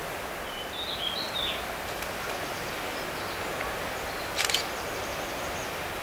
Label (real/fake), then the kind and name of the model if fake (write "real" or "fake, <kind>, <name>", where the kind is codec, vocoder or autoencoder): real